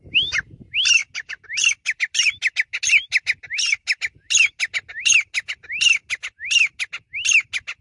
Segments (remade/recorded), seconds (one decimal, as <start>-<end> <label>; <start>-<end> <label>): 0.0-7.8 recorded